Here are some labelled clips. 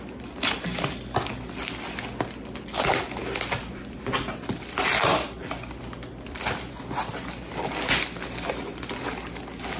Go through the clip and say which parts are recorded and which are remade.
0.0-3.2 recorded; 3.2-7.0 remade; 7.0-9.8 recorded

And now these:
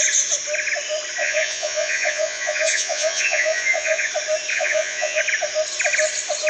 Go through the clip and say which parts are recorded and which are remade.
0.0-1.2 recorded; 1.2-4.1 remade; 4.1-4.5 recorded; 4.5-5.2 remade; 5.2-6.5 recorded

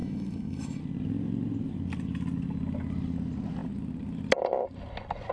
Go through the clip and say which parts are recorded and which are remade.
0.0-0.8 remade; 0.8-5.3 recorded

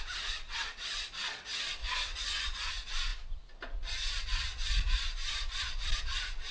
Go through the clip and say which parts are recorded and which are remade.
0.0-1.8 recorded; 1.8-2.7 remade; 2.7-6.5 recorded

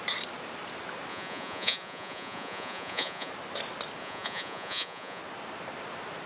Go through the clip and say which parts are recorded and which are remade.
0.0-1.1 recorded; 1.1-3.3 remade; 3.3-4.0 recorded; 4.0-5.2 remade; 5.2-6.3 recorded